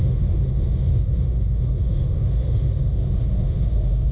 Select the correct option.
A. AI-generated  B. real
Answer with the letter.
A